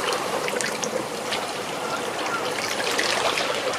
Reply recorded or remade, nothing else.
remade